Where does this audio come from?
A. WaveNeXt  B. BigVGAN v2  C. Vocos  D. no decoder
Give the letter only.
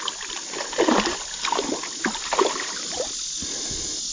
D